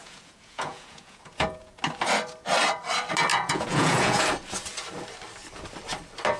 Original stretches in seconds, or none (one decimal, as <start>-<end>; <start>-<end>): 1.8-3.3; 4.2-6.4